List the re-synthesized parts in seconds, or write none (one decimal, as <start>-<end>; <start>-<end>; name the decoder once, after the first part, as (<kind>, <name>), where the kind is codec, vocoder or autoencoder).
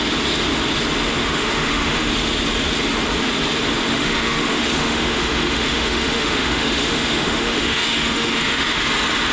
1.2-2.1 (autoencoder, DAC-VAE); 3.9-8.9